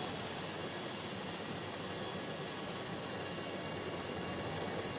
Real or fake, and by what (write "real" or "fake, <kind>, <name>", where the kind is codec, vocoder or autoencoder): real